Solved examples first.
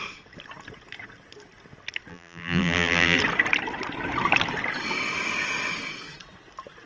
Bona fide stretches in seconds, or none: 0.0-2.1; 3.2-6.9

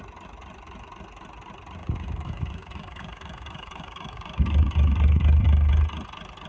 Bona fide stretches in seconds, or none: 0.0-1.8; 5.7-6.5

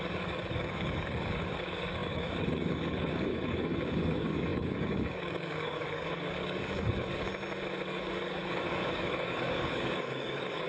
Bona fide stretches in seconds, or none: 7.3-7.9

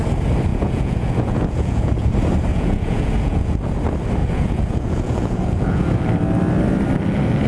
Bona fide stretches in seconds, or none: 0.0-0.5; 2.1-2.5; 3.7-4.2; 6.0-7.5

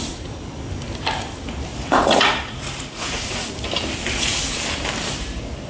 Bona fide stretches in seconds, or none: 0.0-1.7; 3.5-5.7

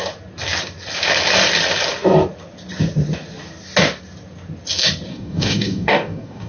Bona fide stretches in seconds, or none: 0.0-5.1

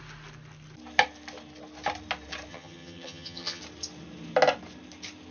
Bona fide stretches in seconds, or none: 0.0-2.5; 3.6-5.3

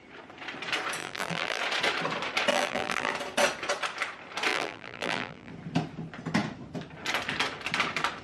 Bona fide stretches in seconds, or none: 0.0-1.0; 1.6-2.5; 3.1-4.5; 5.5-8.2